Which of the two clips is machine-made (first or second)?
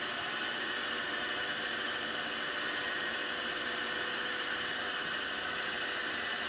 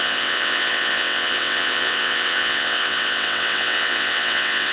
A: second